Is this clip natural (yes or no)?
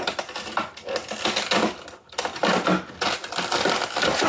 yes